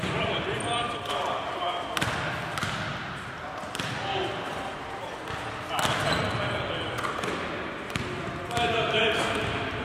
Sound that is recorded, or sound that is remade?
recorded